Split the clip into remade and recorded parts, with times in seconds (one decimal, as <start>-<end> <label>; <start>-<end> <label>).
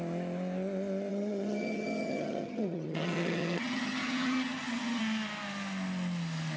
0.0-1.1 recorded; 1.1-5.0 remade; 5.0-6.6 recorded